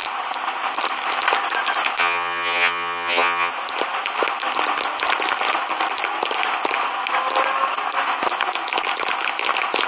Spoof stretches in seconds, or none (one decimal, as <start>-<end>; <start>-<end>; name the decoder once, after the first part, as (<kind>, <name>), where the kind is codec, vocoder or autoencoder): 2.0-3.5 (vocoder, HiFi-GAN)